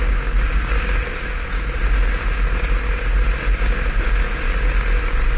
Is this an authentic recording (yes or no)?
yes